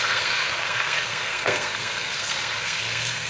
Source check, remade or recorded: remade